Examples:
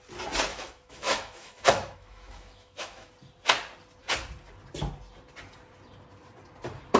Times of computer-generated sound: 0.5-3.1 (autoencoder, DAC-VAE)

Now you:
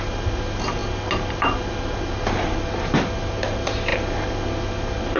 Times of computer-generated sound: none

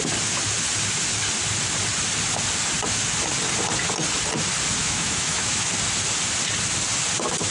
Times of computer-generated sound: 4.8-5.7 (autoencoder, DAC-VAE)

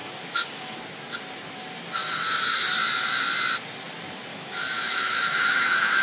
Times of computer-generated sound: 0.0-0.8 (autoencoder, DAC-VAE); 2.0-2.7; 4.3-6.0

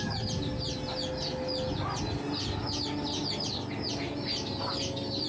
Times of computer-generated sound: none

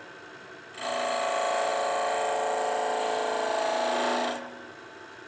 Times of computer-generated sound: none

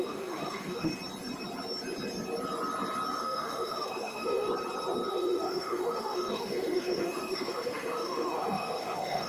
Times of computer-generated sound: 0.0-0.9 (autoencoder, DAC-VAE); 3.2-4.5; 5.1-9.3